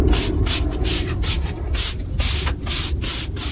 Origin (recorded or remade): recorded